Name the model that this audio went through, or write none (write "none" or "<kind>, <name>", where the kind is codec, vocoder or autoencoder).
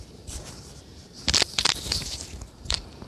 vocoder, BigVGAN v2